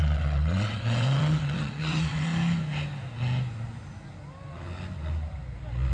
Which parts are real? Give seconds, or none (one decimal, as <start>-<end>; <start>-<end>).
2.3-5.9